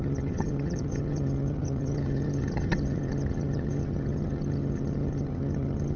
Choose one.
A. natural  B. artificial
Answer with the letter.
B